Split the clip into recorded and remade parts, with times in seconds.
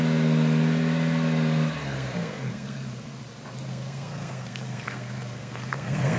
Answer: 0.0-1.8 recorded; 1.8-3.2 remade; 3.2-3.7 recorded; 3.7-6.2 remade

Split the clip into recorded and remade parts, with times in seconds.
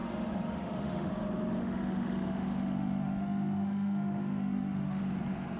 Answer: 0.0-1.1 remade; 1.1-1.6 recorded; 1.6-5.0 remade; 5.0-5.6 recorded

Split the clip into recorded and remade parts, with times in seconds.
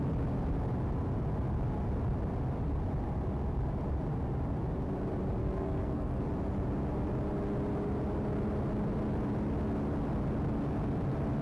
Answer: 0.0-5.4 recorded; 5.4-6.2 remade; 6.2-11.4 recorded